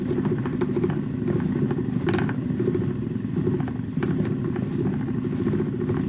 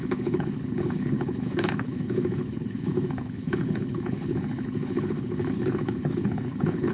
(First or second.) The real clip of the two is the first